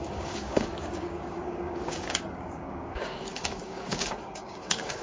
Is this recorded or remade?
remade